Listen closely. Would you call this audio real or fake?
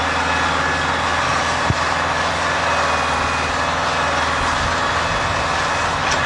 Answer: real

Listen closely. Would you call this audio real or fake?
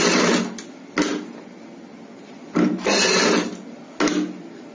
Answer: real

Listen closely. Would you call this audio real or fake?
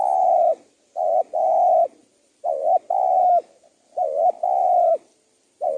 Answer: real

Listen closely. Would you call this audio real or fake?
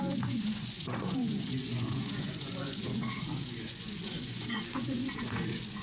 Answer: fake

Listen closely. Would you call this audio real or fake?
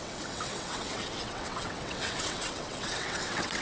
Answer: fake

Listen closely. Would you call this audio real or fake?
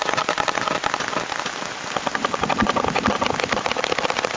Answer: real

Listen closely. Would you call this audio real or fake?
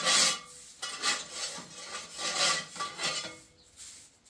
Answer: real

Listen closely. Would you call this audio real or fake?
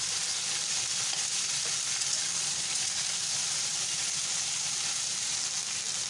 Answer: fake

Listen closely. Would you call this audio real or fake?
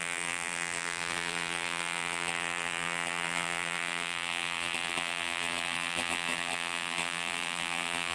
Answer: fake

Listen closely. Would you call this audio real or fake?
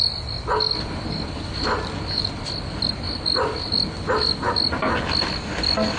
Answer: real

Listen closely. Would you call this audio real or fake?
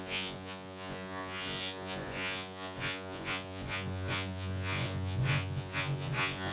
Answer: fake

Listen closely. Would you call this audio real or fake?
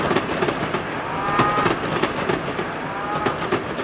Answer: real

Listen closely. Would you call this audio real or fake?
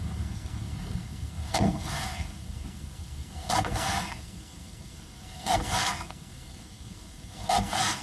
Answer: fake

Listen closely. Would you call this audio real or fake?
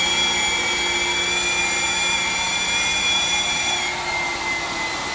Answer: real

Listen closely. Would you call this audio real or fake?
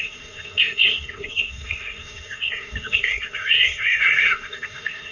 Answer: fake